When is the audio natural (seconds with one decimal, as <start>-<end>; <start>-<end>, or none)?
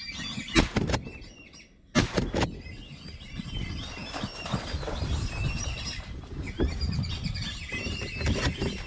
0.0-8.9